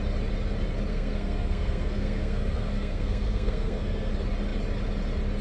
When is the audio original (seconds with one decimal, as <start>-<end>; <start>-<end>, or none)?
0.0-0.9; 4.1-5.4